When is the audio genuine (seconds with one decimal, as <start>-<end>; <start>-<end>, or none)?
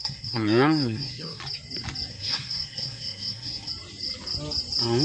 1.4-2.1; 3.7-5.0